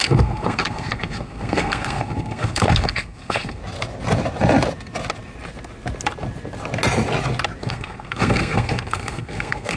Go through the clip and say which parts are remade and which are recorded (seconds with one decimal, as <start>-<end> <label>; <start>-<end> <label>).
0.0-3.6 remade; 3.6-7.6 recorded; 7.6-9.8 remade